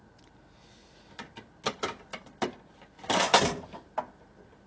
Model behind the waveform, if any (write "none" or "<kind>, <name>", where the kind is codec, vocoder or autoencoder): none